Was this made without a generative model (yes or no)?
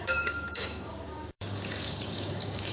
no